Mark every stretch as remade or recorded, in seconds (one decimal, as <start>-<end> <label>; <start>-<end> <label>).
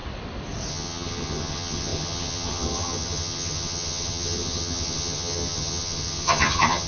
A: 0.0-0.7 recorded; 0.7-6.9 remade